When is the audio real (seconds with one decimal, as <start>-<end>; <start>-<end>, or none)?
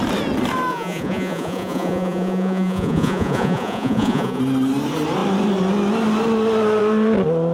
0.0-0.7; 4.4-7.5